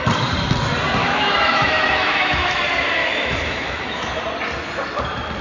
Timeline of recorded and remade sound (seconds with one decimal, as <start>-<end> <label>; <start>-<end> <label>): 0.0-1.0 recorded; 1.0-2.6 remade; 2.6-3.0 recorded; 3.0-4.2 remade; 4.2-5.4 recorded